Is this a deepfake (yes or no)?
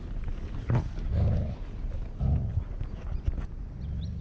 no